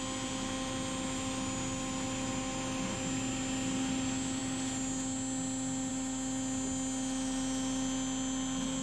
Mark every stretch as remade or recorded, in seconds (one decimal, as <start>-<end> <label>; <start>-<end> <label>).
0.0-8.8 recorded